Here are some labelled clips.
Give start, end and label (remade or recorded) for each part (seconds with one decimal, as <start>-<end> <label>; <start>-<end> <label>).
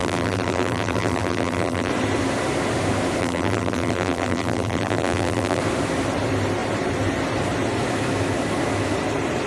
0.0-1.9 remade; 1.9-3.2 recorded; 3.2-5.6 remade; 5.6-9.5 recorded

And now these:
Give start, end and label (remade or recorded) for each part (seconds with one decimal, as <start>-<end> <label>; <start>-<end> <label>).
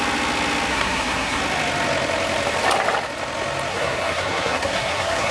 0.0-0.7 recorded; 0.7-1.4 remade; 1.4-3.7 recorded; 3.7-5.3 remade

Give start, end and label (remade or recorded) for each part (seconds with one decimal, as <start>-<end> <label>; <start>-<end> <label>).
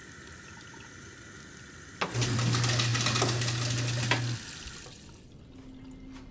0.0-6.3 recorded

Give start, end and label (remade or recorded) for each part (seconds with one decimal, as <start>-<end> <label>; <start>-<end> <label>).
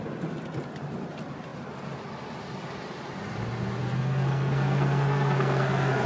0.0-3.8 recorded; 3.8-6.1 remade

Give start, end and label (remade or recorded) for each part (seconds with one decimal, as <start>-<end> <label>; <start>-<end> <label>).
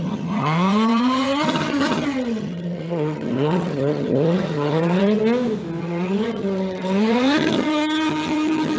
0.0-5.2 remade; 5.2-5.8 recorded; 5.8-8.8 remade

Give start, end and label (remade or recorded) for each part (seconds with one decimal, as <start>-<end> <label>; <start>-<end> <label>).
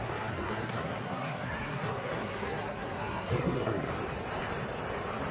0.0-3.9 remade; 3.9-5.3 recorded